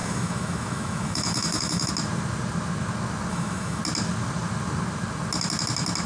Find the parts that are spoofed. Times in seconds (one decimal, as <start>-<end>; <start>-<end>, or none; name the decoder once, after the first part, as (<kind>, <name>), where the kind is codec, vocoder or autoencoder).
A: 0.0-1.9 (autoencoder, DAC-VAE); 3.3-3.8